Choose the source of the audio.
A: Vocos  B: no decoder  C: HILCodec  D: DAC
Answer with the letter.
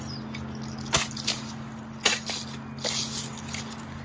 B